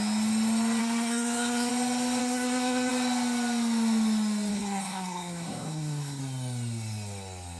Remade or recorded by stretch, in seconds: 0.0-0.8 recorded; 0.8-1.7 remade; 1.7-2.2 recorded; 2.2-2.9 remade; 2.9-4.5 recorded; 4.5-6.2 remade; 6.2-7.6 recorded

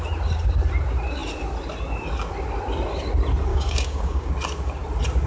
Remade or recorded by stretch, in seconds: 0.0-3.5 recorded; 3.5-4.3 remade; 4.3-5.3 recorded